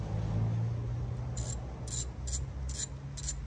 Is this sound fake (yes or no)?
no